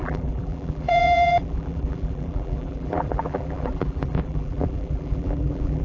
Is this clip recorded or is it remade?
remade